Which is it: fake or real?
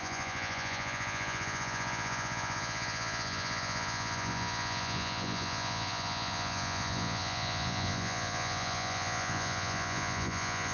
fake